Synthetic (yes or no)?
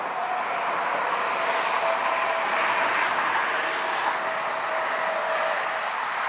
no